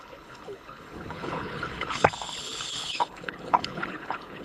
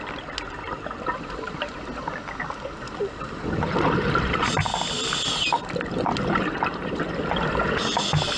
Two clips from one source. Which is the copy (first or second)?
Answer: first